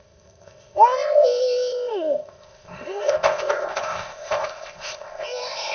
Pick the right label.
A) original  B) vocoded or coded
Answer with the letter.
B